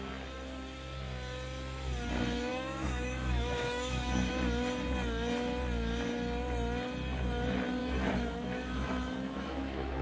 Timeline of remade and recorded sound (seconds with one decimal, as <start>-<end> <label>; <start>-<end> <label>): 0.0-2.5 recorded; 2.5-4.3 remade; 4.3-7.8 recorded; 7.8-10.0 remade